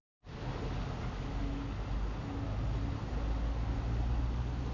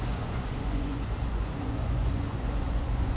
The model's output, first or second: second